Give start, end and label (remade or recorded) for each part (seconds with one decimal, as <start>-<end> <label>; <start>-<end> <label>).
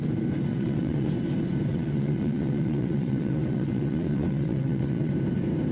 0.0-0.5 recorded; 0.5-1.1 remade; 1.1-1.7 recorded; 1.7-5.1 remade; 5.1-5.7 recorded